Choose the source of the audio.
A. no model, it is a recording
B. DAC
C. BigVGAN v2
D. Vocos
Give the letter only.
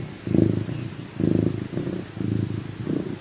A